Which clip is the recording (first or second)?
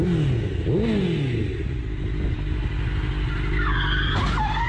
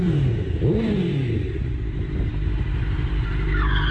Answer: first